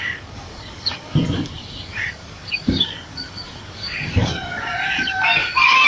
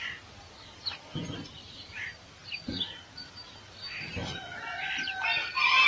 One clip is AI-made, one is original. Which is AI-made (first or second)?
first